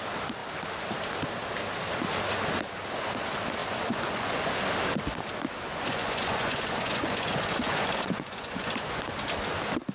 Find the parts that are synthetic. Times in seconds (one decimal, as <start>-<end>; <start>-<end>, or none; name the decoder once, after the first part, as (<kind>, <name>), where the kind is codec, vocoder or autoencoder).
3.6-4.5 (vocoder, Vocos); 5.7-9.0